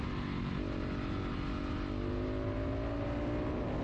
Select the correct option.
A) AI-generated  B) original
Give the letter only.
B